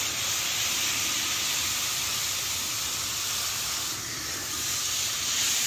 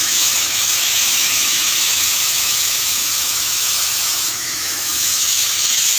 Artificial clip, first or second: second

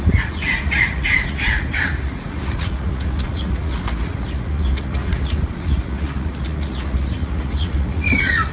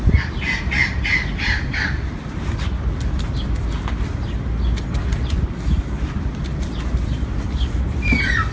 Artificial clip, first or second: first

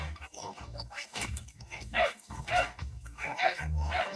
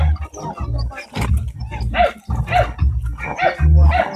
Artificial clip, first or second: first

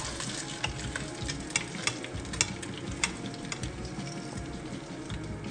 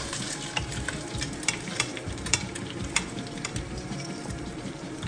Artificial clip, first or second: second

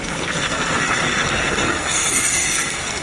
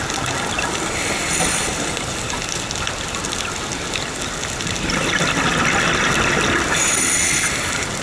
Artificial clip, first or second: first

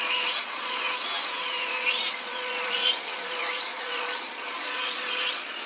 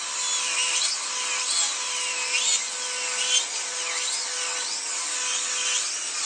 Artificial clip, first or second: first